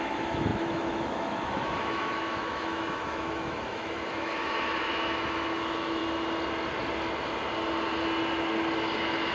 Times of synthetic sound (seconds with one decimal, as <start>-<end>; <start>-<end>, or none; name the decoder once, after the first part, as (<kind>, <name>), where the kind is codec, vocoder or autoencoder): 0.0-6.0 (autoencoder, DAC-VAE)